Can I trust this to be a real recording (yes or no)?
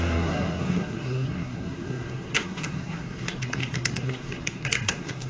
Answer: no